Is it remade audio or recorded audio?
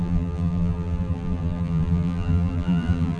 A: remade